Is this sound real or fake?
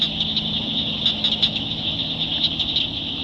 real